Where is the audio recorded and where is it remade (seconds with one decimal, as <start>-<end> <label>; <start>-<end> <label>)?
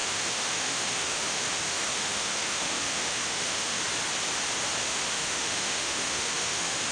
0.0-3.8 remade; 3.8-4.8 recorded; 4.8-6.9 remade